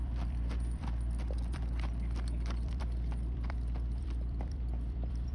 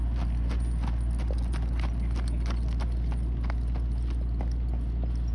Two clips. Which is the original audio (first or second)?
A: second